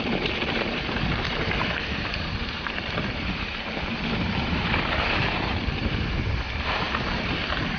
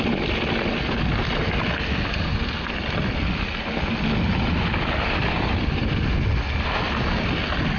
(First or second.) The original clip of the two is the second